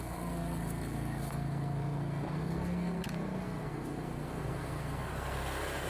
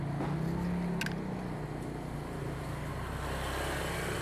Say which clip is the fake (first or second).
first